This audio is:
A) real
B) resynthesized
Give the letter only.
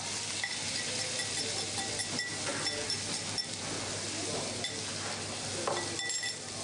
A